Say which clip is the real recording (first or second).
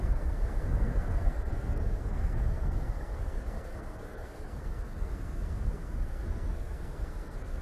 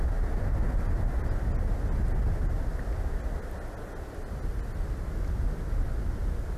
second